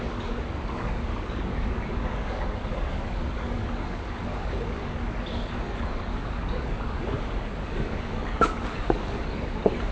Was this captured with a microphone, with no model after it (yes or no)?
no